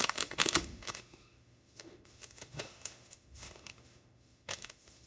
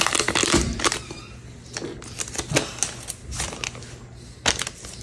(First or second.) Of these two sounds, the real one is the second